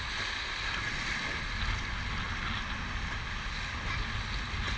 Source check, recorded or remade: recorded